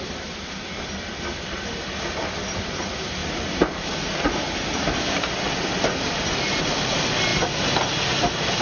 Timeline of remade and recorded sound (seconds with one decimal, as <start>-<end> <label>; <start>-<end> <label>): 0.0-8.6 recorded

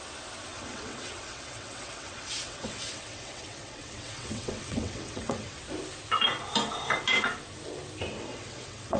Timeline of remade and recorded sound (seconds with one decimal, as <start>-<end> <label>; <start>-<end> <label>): 0.0-0.5 recorded; 0.5-5.6 remade; 5.6-8.1 recorded; 8.1-9.0 remade

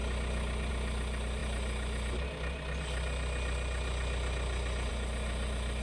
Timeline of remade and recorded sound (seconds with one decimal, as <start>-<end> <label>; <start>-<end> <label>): 0.0-5.8 recorded

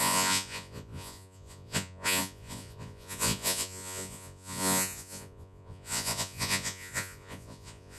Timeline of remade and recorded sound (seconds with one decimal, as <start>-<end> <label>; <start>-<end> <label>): 0.0-8.0 remade